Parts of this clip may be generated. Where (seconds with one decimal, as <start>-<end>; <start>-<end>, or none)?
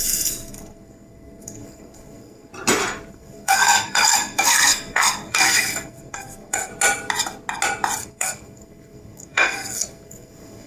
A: 0.0-2.5; 3.1-6.7; 8.0-10.7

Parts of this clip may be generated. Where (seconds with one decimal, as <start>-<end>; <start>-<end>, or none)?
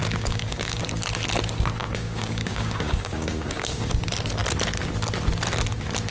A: 0.0-0.8; 1.8-4.0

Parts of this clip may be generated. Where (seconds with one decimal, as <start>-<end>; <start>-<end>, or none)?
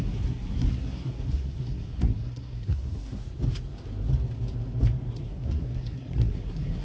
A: 0.0-3.2; 5.1-6.8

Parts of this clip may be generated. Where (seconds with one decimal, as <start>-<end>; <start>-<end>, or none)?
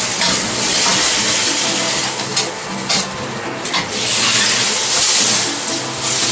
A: none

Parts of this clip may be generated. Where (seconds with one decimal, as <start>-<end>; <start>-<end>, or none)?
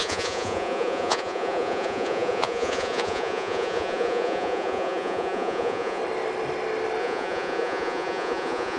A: 0.0-6.0; 7.0-8.8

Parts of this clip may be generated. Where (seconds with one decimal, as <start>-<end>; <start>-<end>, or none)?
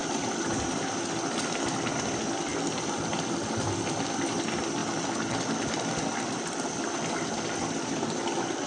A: none